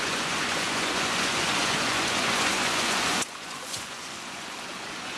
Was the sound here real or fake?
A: fake